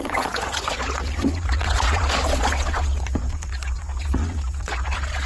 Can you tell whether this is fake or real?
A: fake